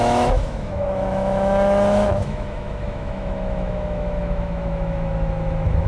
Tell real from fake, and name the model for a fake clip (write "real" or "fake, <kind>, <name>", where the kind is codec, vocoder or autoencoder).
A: fake, autoencoder, DAC-VAE